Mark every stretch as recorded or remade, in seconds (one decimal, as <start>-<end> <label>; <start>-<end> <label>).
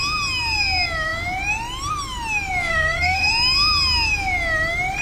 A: 0.0-2.7 recorded; 2.7-3.3 remade; 3.3-5.0 recorded